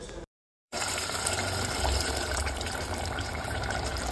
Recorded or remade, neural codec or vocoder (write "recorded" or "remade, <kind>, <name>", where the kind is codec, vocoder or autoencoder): remade, vocoder, BigVGAN v2